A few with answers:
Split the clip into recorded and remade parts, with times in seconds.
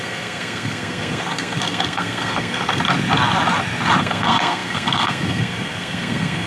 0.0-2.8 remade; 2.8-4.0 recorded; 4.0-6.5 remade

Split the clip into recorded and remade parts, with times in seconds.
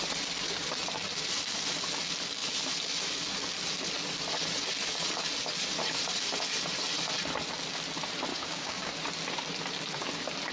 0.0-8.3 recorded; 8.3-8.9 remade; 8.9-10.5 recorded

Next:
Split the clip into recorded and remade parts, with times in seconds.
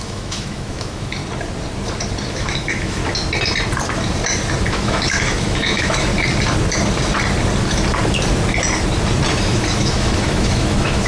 0.0-1.2 remade; 1.2-2.3 recorded; 2.3-3.0 remade; 3.0-4.7 recorded; 4.7-6.1 remade; 6.1-9.4 recorded; 9.4-11.1 remade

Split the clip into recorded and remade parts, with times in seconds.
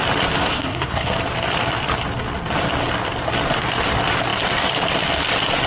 0.0-0.4 recorded; 0.4-1.2 remade; 1.2-5.7 recorded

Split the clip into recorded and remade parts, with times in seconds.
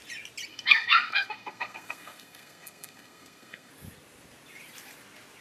0.0-0.5 recorded; 0.5-3.7 remade; 3.7-5.4 recorded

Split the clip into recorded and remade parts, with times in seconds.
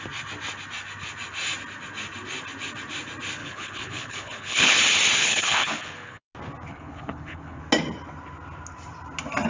0.0-3.4 recorded; 3.4-4.8 remade; 4.8-5.2 recorded; 5.2-6.2 remade; 6.2-6.7 recorded; 6.7-7.6 remade; 7.6-9.5 recorded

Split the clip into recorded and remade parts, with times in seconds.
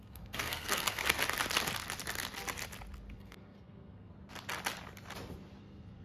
0.0-1.0 remade; 1.0-3.1 recorded; 3.1-4.1 remade; 4.1-5.6 recorded; 5.6-6.0 remade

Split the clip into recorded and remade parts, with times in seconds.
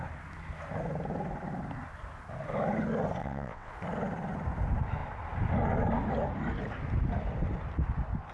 0.0-3.2 recorded; 3.2-3.7 remade; 3.7-8.3 recorded